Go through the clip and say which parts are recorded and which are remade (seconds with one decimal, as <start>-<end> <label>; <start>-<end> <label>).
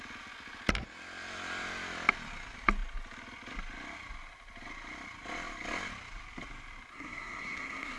0.0-6.9 recorded; 6.9-8.0 remade